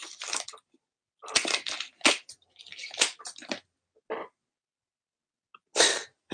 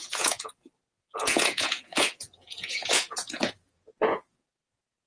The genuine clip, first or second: first